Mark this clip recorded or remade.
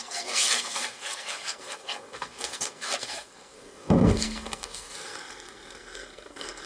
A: remade